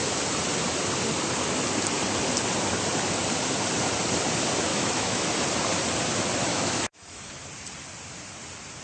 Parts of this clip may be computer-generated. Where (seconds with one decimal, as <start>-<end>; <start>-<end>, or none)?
4.7-5.3; 6.5-7.3